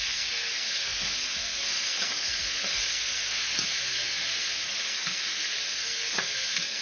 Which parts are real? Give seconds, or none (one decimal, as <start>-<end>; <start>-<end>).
none